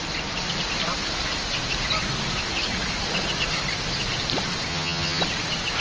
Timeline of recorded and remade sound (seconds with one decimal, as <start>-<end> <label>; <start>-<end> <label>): 0.0-4.7 recorded; 4.7-5.2 remade; 5.2-5.8 recorded